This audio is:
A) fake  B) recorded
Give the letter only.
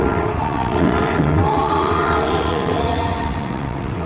A